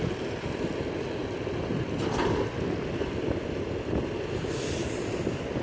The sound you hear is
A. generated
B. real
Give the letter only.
B